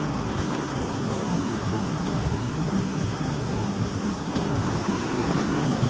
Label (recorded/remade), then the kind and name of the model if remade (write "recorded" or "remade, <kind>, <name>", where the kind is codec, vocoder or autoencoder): remade, codec, SNAC